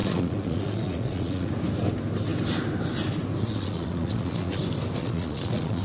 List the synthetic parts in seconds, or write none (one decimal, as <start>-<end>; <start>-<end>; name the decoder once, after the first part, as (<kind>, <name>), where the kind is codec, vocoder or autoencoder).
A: 0.0-1.5 (vocoder, Vocos); 3.4-4.6; 5.0-5.8